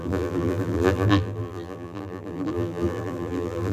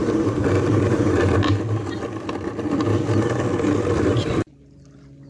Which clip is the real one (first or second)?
second